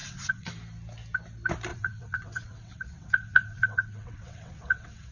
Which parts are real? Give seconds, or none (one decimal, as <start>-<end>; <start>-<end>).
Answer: 0.5-1.7

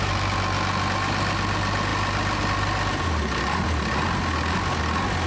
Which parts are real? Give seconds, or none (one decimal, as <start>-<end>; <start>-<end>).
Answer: 0.0-5.3

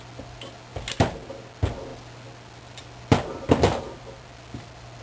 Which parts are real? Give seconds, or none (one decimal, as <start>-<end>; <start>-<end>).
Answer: 0.0-5.0

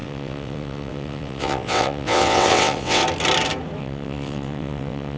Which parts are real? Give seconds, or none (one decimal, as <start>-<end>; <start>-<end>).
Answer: 3.0-3.8

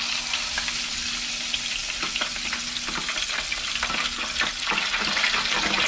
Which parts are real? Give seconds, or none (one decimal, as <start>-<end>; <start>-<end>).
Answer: 0.0-5.9